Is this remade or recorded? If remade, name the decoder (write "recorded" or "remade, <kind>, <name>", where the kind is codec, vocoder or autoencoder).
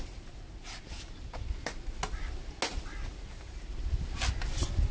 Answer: recorded